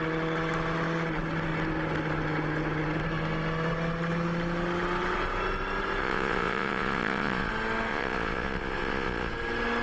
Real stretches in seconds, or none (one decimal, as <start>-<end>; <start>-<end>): 0.0-6.0; 7.5-7.9; 9.3-9.8